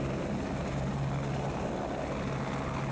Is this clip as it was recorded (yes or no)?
yes